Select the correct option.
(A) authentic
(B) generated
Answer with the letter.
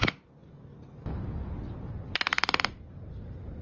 A